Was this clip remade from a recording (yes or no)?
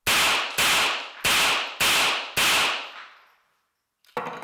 no